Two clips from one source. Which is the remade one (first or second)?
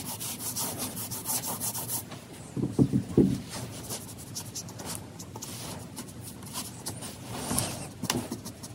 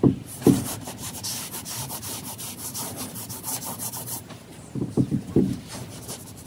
second